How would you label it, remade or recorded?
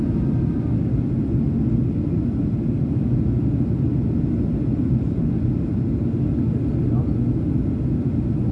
recorded